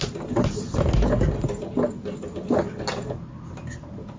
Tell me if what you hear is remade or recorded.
recorded